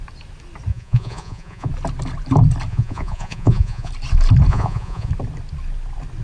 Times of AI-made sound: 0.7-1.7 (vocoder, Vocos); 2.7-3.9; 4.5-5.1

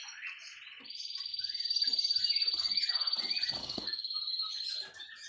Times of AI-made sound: 3.6-4.5 (codec, SNAC)

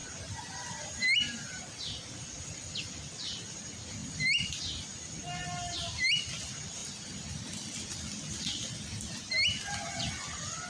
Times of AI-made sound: 4.0-4.5 (vocoder, BigVGAN v2); 6.8-8.4

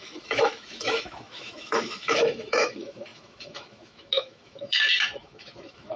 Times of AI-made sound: 0.0-6.0 (autoencoder, DAC-VAE)